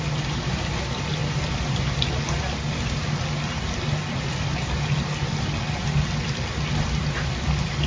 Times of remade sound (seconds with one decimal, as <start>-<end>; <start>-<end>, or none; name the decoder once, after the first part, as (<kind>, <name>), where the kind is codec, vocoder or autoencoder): none